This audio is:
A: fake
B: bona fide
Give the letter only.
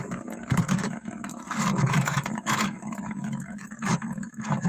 A